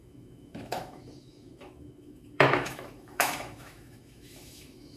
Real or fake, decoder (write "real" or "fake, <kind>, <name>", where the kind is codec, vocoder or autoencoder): fake, autoencoder, DAC-VAE